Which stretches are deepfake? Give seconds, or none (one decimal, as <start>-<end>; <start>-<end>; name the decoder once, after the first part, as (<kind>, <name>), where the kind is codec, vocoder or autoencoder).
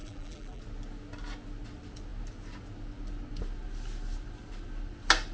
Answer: 0.0-0.6 (vocoder, BigVGAN v2)